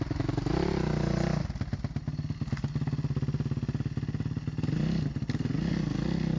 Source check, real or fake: real